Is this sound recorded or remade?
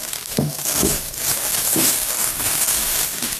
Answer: remade